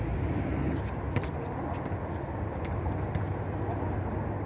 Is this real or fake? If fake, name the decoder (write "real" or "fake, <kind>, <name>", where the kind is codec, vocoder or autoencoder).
real